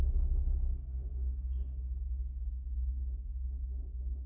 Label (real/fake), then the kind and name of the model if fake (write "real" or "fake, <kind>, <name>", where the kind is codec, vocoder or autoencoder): real